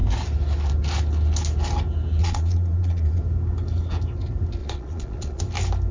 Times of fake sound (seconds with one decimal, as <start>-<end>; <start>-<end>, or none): 2.2-3.2; 4.6-5.4